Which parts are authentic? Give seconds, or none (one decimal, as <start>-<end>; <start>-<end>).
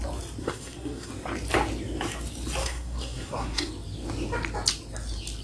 0.0-0.4; 1.1-2.6; 3.7-5.4